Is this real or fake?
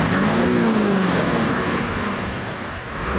fake